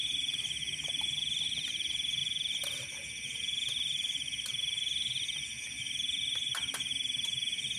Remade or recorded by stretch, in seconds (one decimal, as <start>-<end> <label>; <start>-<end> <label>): 0.0-7.8 recorded